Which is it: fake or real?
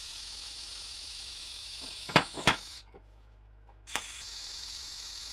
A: fake